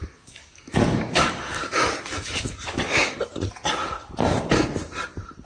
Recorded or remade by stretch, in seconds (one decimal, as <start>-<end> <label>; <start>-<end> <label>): 0.0-3.2 remade; 3.2-5.4 recorded

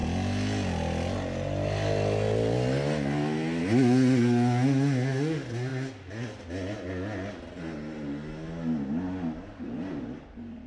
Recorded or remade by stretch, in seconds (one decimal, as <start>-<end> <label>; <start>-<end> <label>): 0.0-10.7 recorded